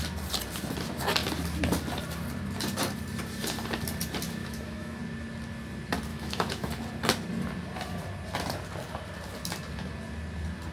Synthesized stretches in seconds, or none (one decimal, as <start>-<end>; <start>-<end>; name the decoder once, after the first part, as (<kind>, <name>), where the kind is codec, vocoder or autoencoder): 4.4-5.0 (autoencoder, DAC-VAE); 6.1-6.7